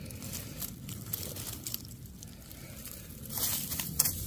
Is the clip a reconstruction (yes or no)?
yes